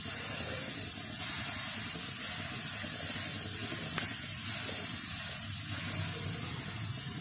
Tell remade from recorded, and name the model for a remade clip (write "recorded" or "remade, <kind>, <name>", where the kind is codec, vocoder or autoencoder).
recorded